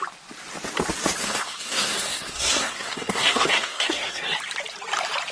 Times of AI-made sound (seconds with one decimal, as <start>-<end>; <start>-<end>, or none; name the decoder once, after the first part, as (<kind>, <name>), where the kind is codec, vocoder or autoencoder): 1.2-4.2 (codec, SNAC)